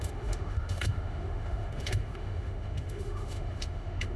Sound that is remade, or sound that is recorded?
remade